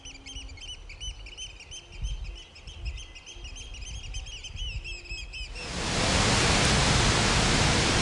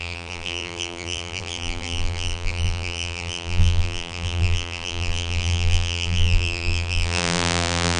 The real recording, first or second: first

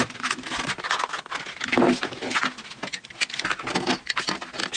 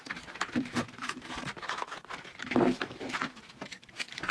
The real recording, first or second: first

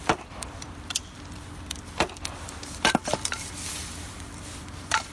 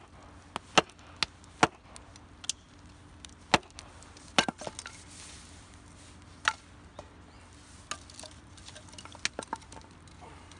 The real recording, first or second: second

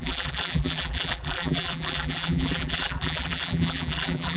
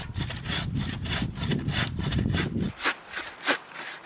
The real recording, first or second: second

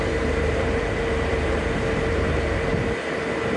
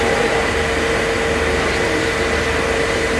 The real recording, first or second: second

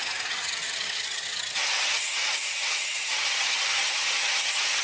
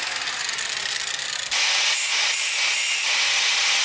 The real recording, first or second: second